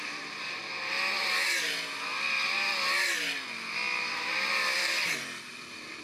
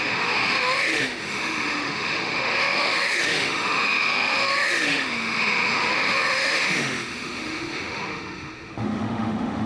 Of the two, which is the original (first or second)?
first